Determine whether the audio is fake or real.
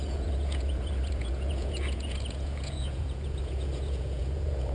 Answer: fake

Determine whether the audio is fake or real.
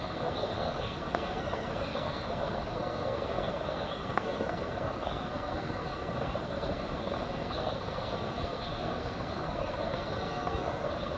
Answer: fake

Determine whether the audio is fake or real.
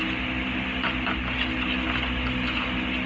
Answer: real